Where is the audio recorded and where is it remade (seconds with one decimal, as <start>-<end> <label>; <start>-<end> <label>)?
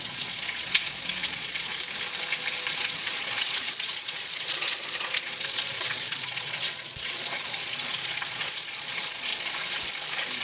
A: 0.0-1.7 remade; 1.7-2.7 recorded; 2.7-9.3 remade; 9.3-10.4 recorded